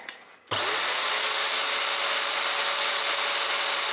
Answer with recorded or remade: recorded